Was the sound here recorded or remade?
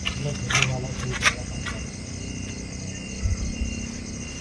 recorded